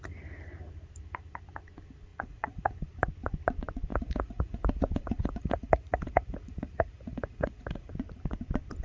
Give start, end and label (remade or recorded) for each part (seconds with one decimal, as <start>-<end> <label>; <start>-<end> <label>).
0.0-2.1 recorded; 2.1-2.7 remade; 2.7-3.9 recorded; 3.9-7.9 remade; 7.9-8.8 recorded